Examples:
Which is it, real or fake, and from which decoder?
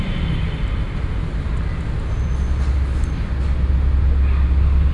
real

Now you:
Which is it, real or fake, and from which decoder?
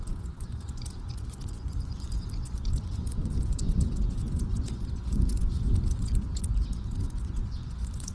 fake, vocoder, Vocos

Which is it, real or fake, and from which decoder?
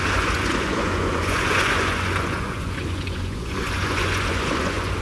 fake, vocoder, Vocos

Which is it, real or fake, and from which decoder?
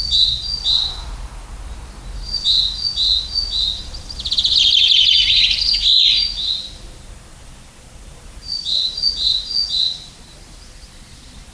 real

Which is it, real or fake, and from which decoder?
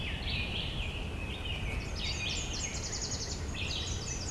real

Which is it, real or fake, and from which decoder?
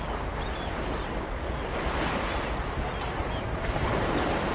real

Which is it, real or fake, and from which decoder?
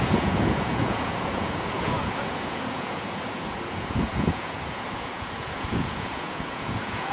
fake, vocoder, Vocos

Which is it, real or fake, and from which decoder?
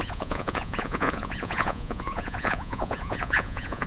fake, vocoder, Vocos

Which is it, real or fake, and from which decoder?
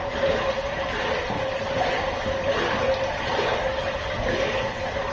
real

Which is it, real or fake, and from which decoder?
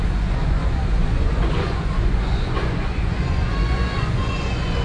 fake, vocoder, Vocos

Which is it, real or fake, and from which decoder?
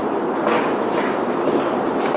real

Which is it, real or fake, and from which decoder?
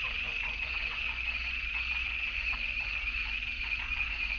fake, vocoder, Vocos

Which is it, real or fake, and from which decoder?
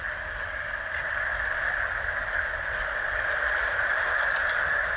real